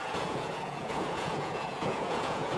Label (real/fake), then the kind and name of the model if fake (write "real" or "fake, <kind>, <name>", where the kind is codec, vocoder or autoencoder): fake, vocoder, Vocos